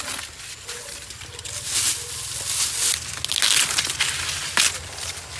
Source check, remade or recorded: recorded